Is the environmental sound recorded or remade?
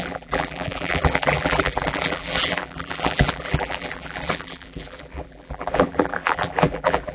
remade